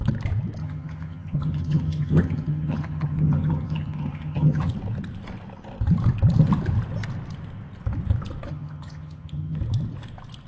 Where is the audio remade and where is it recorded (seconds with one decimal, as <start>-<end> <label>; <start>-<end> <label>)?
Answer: 0.0-0.6 recorded; 0.6-4.7 remade; 4.7-8.5 recorded; 8.5-9.6 remade; 9.6-10.5 recorded